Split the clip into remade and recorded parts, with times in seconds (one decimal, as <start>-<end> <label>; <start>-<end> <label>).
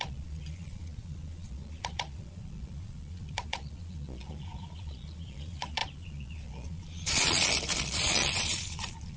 0.0-9.2 remade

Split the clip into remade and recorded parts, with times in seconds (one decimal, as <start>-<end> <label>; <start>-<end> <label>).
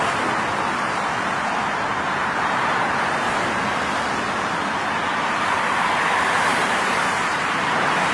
0.0-2.2 recorded; 2.2-3.3 remade; 3.3-6.5 recorded; 6.5-7.6 remade; 7.6-8.1 recorded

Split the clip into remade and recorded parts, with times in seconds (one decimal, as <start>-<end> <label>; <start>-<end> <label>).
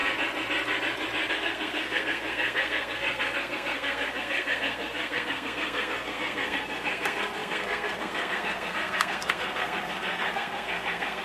0.0-1.3 recorded; 1.3-11.2 remade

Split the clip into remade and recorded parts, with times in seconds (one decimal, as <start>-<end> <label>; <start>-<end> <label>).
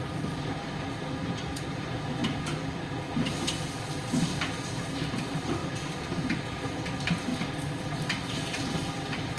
0.0-2.2 remade; 2.2-4.2 recorded; 4.2-7.3 remade; 7.3-7.8 recorded; 7.8-9.4 remade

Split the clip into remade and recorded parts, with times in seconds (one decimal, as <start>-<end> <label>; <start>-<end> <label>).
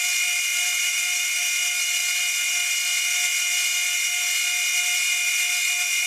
0.0-0.5 recorded; 0.5-1.4 remade; 1.4-6.1 recorded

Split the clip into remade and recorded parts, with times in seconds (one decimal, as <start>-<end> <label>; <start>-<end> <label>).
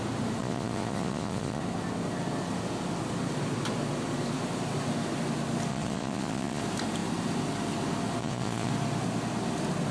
0.0-0.4 recorded; 0.4-1.6 remade; 1.6-5.7 recorded; 5.7-6.6 remade; 6.6-8.2 recorded; 8.2-8.7 remade; 8.7-9.9 recorded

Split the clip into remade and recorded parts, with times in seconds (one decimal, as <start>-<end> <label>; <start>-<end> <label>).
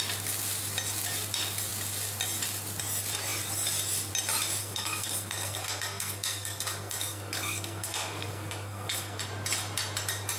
0.0-4.6 recorded; 4.6-9.2 remade; 9.2-10.4 recorded